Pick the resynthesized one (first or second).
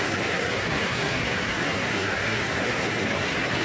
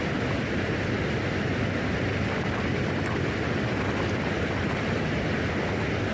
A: first